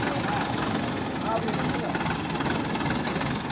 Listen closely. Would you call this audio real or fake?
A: real